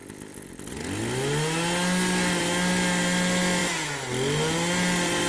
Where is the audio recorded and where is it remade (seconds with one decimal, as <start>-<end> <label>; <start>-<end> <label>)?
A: 0.0-5.3 recorded